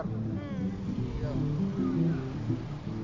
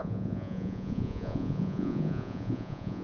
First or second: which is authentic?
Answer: first